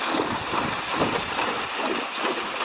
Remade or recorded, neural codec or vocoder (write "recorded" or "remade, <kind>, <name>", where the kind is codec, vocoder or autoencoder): recorded